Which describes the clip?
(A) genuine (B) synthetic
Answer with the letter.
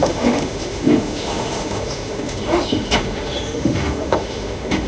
B